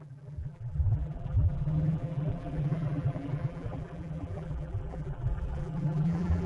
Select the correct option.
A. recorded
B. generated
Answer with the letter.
B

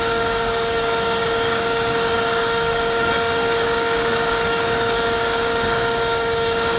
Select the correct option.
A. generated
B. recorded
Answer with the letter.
A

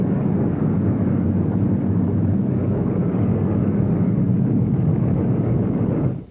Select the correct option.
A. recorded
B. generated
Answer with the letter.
B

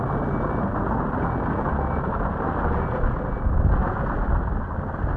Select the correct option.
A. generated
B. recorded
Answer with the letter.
B